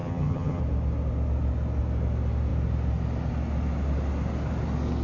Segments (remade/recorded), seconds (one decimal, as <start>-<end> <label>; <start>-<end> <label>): 0.0-0.6 remade; 0.6-5.0 recorded